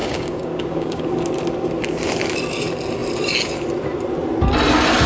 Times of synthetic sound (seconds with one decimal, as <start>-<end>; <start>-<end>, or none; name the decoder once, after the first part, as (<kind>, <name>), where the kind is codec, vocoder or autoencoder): 0.0-1.0 (codec, DAC)